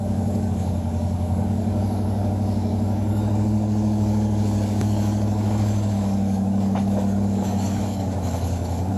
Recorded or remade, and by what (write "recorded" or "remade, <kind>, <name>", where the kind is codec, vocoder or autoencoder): remade, codec, DAC